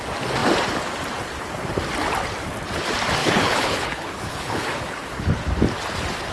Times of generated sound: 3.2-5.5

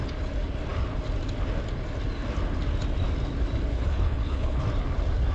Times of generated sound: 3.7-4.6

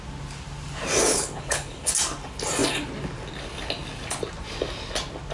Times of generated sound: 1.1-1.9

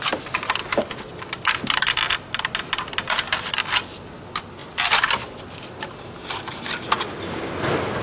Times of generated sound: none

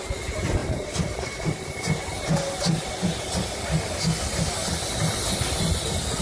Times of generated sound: none

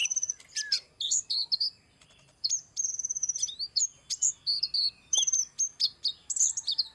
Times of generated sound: none

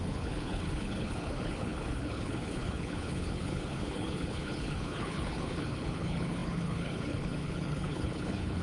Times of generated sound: 0.0-8.6